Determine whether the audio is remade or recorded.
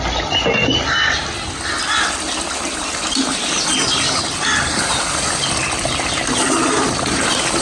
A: recorded